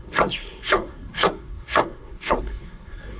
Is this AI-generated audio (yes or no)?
yes